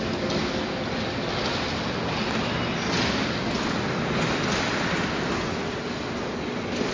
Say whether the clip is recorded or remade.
recorded